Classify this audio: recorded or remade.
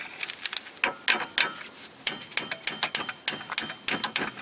recorded